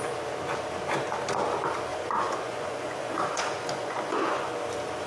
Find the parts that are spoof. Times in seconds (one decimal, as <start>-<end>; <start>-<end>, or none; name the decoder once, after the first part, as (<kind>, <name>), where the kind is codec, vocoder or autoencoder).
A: 1.9-4.5 (vocoder, Vocos)